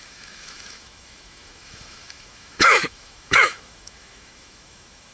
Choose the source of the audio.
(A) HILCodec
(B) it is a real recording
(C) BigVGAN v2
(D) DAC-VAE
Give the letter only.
D